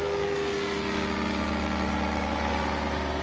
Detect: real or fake real